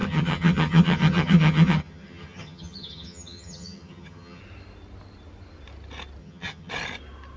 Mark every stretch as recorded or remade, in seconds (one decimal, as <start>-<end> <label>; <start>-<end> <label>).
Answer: 0.0-4.4 remade; 4.4-6.2 recorded; 6.2-6.7 remade; 6.7-7.4 recorded